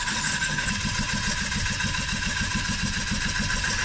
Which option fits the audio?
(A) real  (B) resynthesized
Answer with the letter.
A